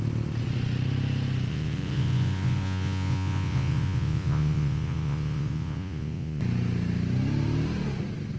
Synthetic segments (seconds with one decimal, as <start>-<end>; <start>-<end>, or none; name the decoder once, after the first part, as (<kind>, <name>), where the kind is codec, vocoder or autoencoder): 1.5-6.4 (vocoder, Vocos)